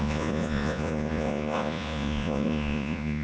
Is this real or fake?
fake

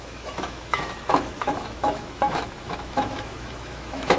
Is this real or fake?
fake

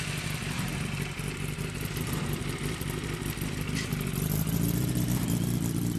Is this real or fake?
fake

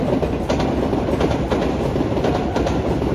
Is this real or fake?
real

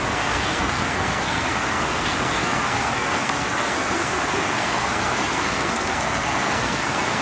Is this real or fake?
fake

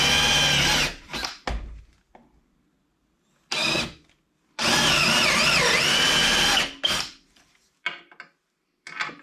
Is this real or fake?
real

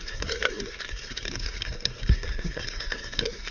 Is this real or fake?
fake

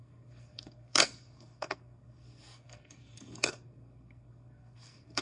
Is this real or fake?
fake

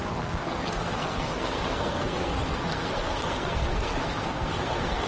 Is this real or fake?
fake